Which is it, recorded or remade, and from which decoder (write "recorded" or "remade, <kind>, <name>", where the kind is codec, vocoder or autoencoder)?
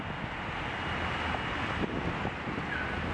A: recorded